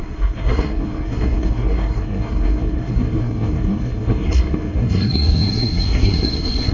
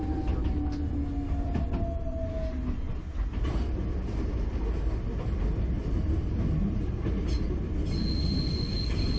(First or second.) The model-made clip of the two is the first